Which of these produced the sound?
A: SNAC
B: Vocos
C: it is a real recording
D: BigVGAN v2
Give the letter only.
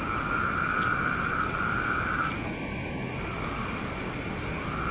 C